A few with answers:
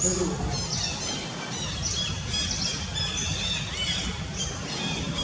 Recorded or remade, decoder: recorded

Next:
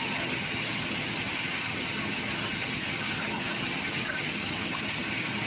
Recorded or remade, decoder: remade, vocoder, HiFi-GAN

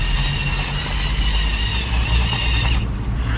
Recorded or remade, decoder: recorded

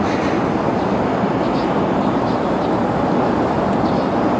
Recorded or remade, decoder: recorded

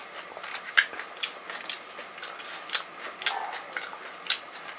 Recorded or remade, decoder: recorded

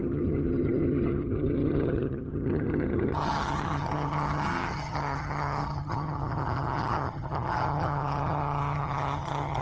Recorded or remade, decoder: remade, vocoder, HiFi-GAN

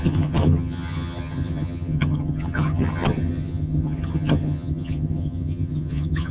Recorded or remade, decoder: remade, vocoder, HiFi-GAN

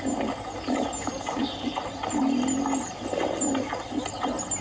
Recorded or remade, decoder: recorded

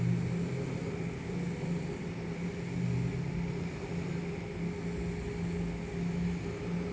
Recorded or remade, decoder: recorded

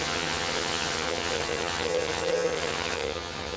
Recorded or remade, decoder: remade, vocoder, HiFi-GAN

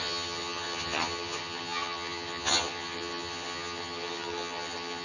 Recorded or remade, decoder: remade, vocoder, HiFi-GAN